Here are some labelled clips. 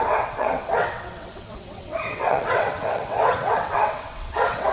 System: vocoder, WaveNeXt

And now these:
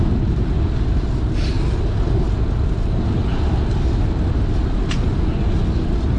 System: none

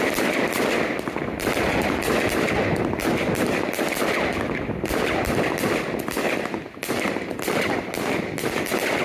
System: none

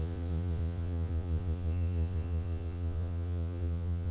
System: vocoder, Vocos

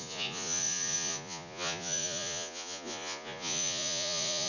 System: vocoder, Vocos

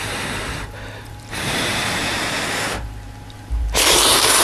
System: vocoder, BigVGAN v2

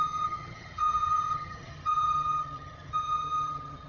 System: vocoder, HiFi-GAN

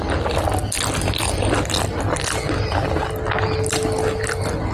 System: none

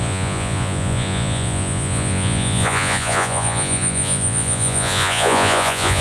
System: vocoder, Vocos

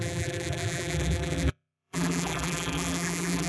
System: vocoder, BigVGAN v2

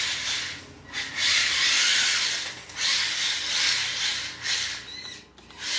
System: none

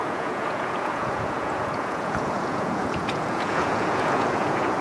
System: vocoder, Vocos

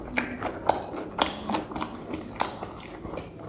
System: none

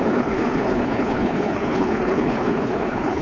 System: codec, HILCodec